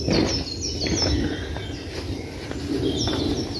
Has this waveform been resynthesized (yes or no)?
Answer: no